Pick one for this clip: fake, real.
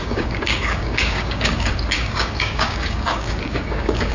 fake